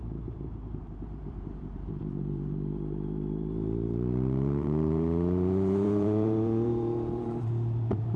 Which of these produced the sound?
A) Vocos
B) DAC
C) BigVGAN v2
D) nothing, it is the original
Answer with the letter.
C